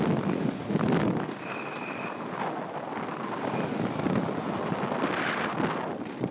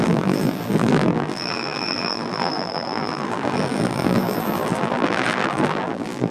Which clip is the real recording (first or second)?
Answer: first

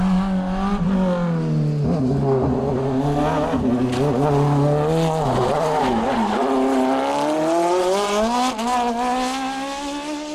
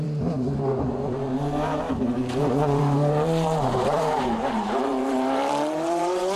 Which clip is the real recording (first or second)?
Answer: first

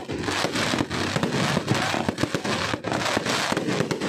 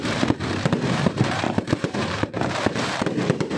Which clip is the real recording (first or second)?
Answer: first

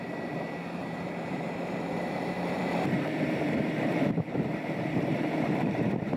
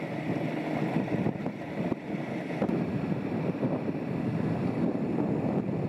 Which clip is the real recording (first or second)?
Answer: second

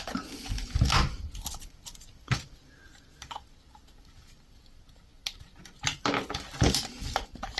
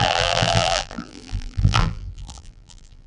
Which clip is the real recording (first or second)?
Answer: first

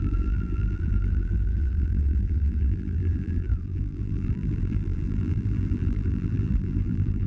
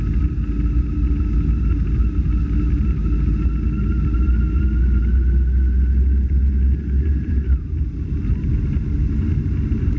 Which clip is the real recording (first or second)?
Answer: second